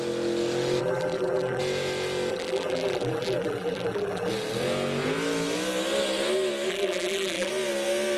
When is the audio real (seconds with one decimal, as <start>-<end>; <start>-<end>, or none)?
0.0-0.8; 1.6-2.3; 4.3-6.7; 7.5-8.2